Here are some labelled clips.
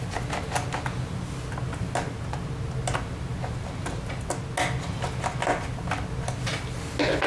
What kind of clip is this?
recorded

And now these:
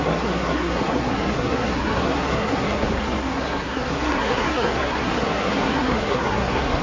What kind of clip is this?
remade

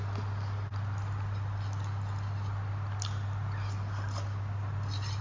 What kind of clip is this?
recorded